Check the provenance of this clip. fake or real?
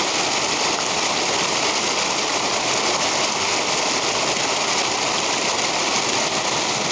real